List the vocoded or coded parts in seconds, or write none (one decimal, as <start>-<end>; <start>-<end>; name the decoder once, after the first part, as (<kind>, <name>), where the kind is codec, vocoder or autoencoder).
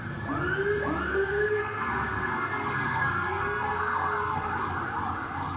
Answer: 1.1-4.5 (codec, SNAC)